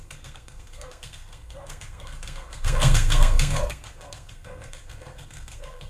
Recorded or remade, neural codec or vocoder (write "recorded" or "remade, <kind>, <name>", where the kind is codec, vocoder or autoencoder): remade, codec, SNAC